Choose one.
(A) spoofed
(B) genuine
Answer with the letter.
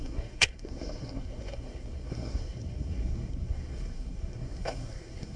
A